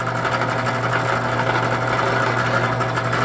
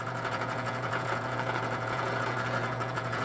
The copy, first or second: second